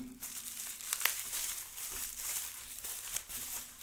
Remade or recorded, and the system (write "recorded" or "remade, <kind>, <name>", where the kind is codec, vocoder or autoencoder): remade, vocoder, BigVGAN v2